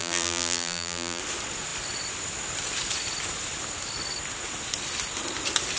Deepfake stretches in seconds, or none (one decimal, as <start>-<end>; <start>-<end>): 0.0-1.2